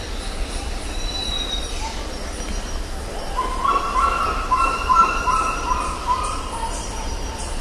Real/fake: fake